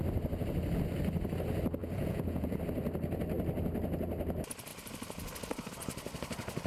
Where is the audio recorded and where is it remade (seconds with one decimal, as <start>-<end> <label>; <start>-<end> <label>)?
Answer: 0.0-1.8 recorded; 1.8-2.6 remade; 2.6-6.7 recorded